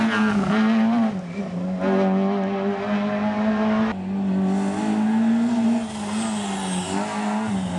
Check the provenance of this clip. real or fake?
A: real